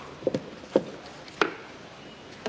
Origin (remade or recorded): recorded